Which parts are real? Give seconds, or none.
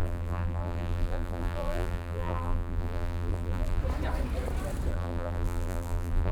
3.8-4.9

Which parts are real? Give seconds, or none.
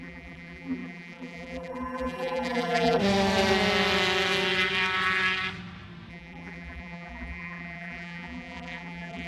3.0-6.1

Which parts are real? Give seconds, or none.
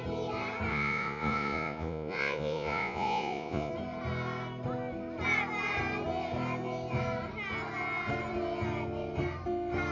0.0-0.7; 3.7-9.9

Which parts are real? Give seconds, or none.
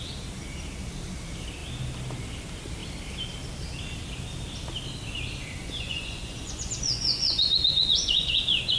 0.0-5.6